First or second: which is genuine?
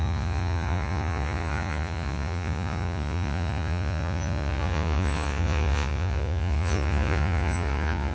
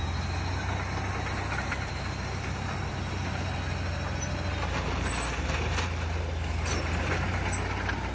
second